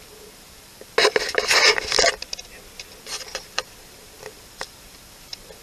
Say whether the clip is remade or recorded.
recorded